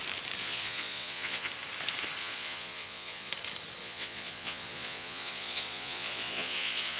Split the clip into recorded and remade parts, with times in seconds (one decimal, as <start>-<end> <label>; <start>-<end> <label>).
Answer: 0.0-0.4 recorded; 0.4-1.5 remade; 1.5-2.2 recorded; 2.2-3.3 remade; 3.3-3.8 recorded; 3.8-7.0 remade